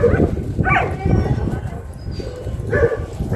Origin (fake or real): fake